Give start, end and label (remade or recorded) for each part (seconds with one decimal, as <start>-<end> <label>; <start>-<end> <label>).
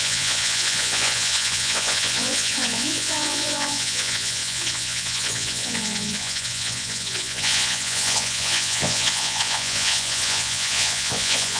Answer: 0.0-11.6 remade